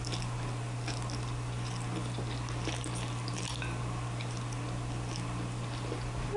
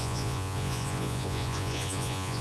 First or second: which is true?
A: first